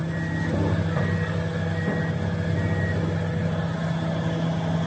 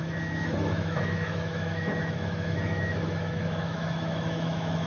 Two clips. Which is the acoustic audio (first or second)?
first